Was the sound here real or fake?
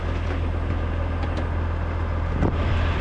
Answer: real